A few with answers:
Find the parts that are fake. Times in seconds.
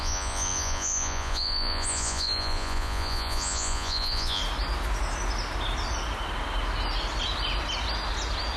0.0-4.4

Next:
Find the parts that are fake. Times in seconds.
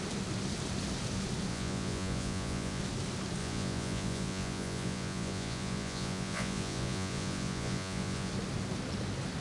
1.5-2.8; 3.4-8.3